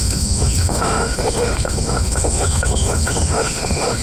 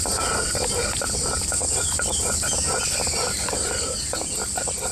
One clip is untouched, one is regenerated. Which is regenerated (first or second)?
first